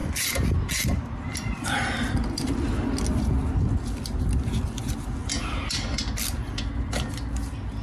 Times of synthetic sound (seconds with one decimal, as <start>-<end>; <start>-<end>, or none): none